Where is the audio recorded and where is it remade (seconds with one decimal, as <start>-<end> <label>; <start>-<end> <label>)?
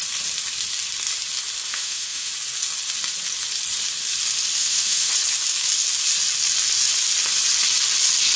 0.0-1.7 recorded; 1.7-2.3 remade; 2.3-4.6 recorded; 4.6-5.1 remade; 5.1-8.4 recorded